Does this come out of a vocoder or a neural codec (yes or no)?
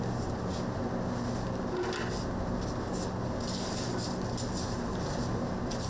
no